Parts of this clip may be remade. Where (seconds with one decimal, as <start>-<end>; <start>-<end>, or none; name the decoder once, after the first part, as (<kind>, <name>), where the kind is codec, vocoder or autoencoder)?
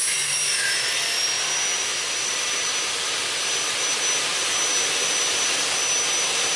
none